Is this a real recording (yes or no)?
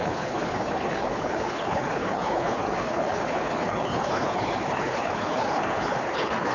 no